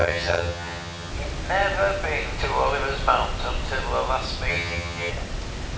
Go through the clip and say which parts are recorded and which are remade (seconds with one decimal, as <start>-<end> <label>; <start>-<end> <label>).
0.0-1.1 remade; 1.1-4.5 recorded; 4.5-5.1 remade; 5.1-5.8 recorded